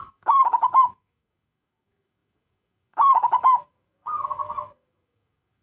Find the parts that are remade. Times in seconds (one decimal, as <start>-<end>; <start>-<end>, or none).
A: 0.0-5.6